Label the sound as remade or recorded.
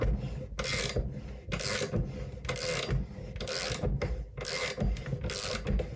recorded